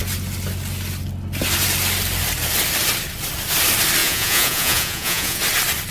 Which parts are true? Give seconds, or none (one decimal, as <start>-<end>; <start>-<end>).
0.0-4.0; 5.4-5.9